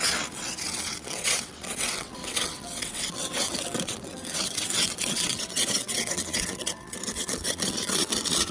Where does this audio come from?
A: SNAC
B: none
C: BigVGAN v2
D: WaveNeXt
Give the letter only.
D